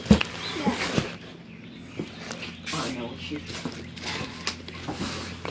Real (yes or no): yes